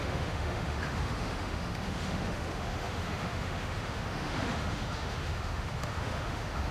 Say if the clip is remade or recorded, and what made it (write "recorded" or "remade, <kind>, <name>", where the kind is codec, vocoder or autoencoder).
remade, autoencoder, DAC-VAE